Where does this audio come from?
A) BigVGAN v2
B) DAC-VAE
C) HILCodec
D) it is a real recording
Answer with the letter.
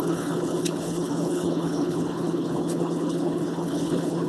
C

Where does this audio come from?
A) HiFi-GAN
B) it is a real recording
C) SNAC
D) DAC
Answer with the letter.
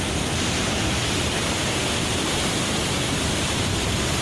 B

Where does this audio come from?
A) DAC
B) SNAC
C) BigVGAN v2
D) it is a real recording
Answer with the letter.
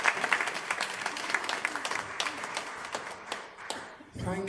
D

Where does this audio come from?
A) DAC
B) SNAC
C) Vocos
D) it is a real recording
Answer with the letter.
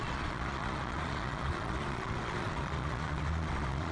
C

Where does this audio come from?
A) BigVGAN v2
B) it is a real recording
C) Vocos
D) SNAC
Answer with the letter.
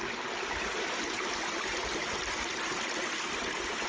B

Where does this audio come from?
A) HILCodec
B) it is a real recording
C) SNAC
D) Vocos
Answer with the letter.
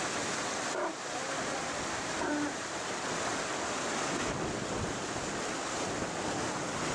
B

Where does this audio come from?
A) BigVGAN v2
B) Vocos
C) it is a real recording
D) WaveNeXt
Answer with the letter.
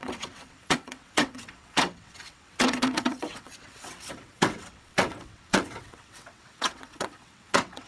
D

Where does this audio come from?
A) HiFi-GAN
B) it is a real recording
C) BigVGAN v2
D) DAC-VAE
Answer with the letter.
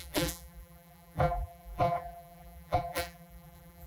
C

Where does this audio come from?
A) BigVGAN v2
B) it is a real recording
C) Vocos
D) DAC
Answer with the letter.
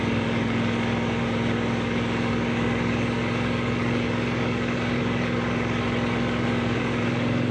D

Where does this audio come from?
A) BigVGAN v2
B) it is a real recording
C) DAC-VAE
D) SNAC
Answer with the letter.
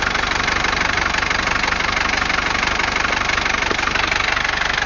B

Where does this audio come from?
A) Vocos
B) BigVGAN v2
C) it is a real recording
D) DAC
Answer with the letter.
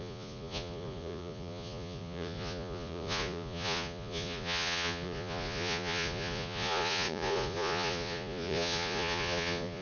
A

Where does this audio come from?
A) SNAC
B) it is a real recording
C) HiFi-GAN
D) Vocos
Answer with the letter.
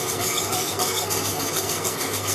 A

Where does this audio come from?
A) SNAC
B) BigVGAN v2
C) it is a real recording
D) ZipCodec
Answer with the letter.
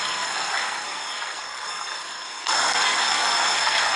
A